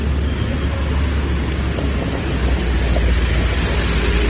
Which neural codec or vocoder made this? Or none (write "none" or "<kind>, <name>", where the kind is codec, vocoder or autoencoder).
none